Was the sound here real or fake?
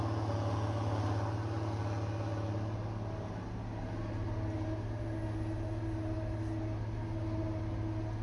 real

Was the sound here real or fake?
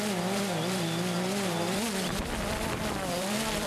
fake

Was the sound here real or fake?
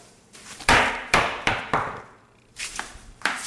fake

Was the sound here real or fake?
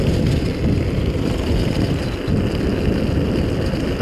real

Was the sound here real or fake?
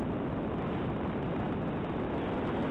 real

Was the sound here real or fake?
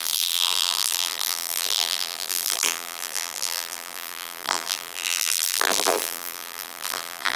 fake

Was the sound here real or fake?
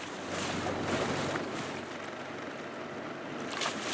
real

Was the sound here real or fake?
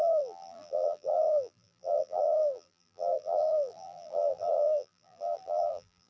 fake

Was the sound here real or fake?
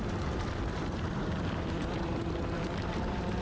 fake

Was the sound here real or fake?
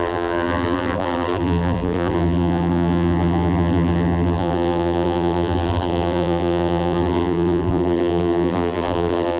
fake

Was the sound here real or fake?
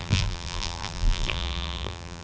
fake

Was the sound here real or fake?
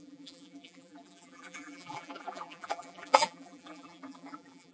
fake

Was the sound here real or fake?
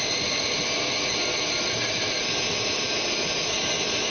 real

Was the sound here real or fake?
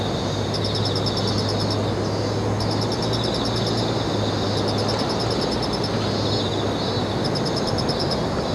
real